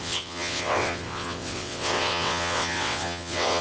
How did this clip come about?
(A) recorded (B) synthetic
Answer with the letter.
B